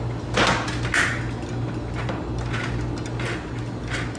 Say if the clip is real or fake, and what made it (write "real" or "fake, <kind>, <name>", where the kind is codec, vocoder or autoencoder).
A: real